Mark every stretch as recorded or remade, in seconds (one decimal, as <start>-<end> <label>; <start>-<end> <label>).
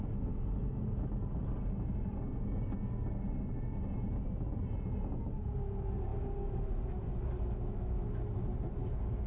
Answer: 0.0-9.3 recorded